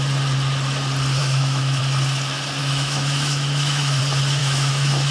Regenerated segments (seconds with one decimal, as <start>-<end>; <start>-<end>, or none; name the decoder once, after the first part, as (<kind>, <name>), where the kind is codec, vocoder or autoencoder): 1.2-1.8 (autoencoder, DAC-VAE); 2.6-4.0; 4.4-5.1